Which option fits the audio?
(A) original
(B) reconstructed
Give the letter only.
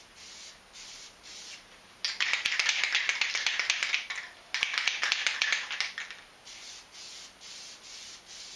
A